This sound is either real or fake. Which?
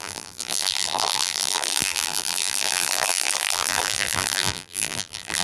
fake